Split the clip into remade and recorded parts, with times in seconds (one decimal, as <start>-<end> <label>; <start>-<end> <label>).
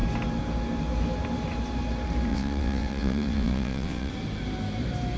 0.0-2.3 recorded; 2.3-4.1 remade; 4.1-5.2 recorded